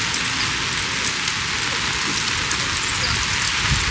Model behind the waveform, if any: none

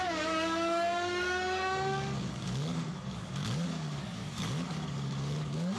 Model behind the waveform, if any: codec, DAC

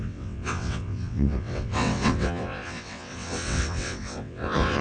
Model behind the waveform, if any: vocoder, WaveNeXt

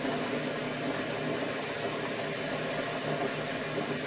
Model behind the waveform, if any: none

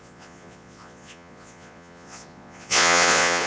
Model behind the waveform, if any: vocoder, Vocos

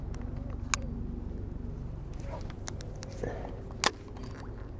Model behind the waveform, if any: none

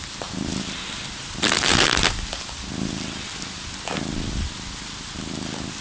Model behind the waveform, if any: none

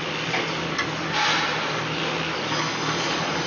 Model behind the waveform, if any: none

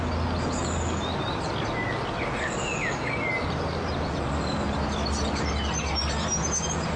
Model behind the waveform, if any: none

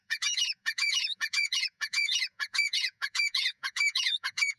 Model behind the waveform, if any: vocoder, Vocos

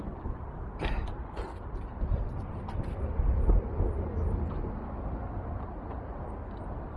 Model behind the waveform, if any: none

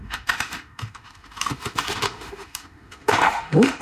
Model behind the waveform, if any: autoencoder, DAC-VAE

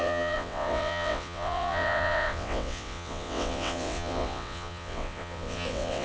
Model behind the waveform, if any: vocoder, WaveNeXt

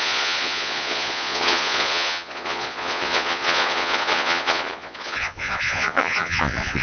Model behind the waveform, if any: vocoder, Vocos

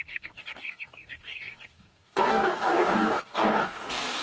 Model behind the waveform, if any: codec, DAC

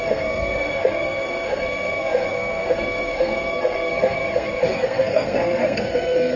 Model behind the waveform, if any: codec, SNAC